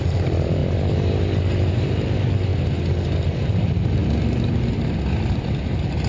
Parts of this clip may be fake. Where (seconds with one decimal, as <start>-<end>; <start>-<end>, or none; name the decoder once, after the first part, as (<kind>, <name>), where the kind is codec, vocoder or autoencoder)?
0.0-0.6 (vocoder, BigVGAN v2); 1.7-2.5; 3.4-6.1